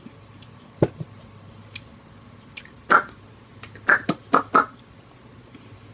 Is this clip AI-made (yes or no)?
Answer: no